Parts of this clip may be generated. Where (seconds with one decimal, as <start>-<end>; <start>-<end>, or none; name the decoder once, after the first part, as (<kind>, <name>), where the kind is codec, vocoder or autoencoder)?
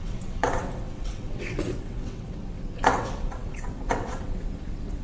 0.0-5.0 (vocoder, WaveNeXt)